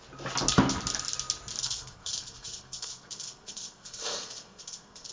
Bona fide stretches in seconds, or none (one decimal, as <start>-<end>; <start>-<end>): 0.0-1.6